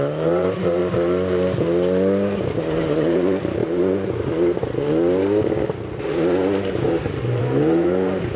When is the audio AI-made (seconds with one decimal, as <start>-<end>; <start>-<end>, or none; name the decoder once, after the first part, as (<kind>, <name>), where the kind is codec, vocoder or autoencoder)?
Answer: 0.0-0.8 (vocoder, BigVGAN v2); 2.8-3.6; 7.4-8.4